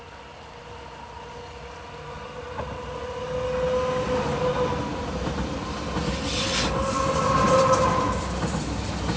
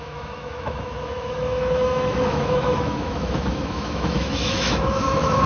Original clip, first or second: first